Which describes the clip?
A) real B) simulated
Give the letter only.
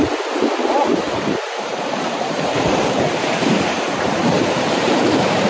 B